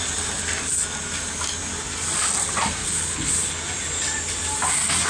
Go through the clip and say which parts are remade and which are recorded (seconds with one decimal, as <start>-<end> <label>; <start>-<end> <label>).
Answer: 0.0-2.8 recorded; 2.8-3.3 remade; 3.3-5.1 recorded